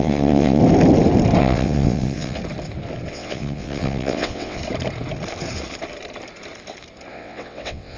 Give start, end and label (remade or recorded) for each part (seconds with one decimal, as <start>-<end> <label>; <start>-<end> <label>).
0.0-0.6 remade; 0.6-1.4 recorded; 1.4-2.4 remade; 2.4-3.1 recorded; 3.1-4.6 remade; 4.6-7.1 recorded; 7.1-8.0 remade